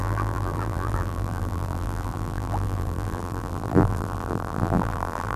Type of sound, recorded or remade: remade